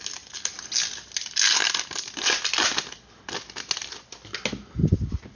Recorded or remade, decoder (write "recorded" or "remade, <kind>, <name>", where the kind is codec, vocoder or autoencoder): recorded